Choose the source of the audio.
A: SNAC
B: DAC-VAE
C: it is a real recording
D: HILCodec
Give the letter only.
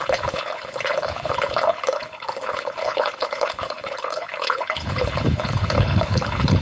D